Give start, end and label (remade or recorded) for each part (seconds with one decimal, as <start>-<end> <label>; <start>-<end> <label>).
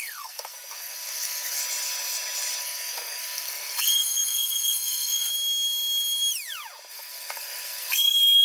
0.0-1.6 remade; 1.6-2.6 recorded; 2.6-5.3 remade; 5.3-6.9 recorded; 6.9-8.4 remade